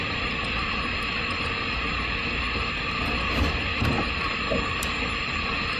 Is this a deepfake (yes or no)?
no